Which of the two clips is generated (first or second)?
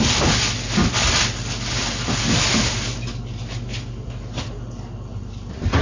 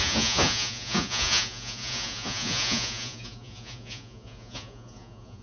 second